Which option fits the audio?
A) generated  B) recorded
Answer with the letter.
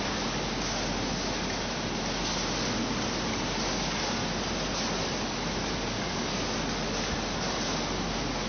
B